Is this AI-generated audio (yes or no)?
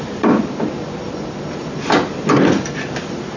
no